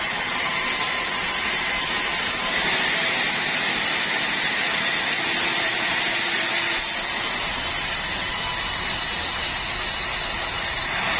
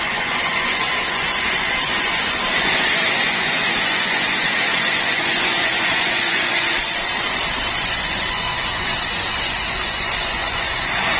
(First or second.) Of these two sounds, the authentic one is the first